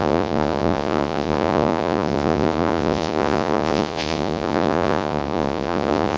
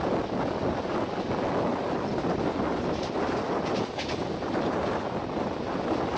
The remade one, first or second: first